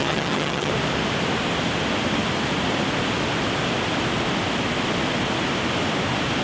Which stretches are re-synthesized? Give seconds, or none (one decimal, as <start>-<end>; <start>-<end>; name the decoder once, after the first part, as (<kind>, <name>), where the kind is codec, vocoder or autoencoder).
0.0-0.7 (vocoder, HiFi-GAN)